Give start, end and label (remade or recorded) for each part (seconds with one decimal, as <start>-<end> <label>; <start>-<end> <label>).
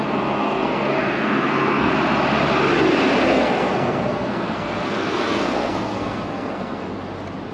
0.0-1.9 remade; 1.9-3.3 recorded; 3.3-6.9 remade; 6.9-7.5 recorded